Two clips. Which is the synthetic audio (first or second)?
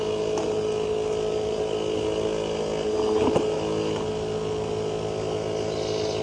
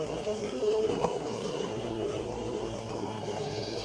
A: second